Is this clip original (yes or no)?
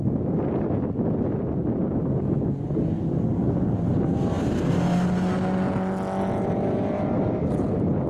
yes